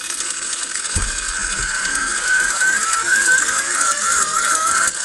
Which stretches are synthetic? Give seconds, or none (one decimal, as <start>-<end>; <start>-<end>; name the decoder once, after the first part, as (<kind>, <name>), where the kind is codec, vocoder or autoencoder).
0.0-5.0 (codec, SNAC)